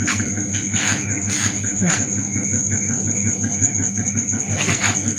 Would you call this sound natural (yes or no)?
no